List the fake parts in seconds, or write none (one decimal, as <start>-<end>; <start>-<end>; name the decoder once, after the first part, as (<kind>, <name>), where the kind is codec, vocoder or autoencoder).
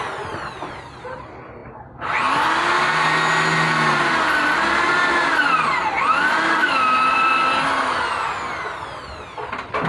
none